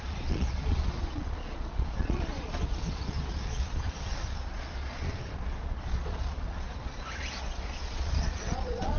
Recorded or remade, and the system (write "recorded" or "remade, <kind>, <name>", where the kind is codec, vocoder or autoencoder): remade, vocoder, Vocos